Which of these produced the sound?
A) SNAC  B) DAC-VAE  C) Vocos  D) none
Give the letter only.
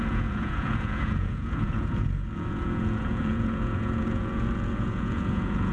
C